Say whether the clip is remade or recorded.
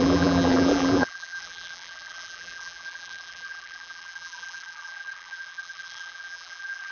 remade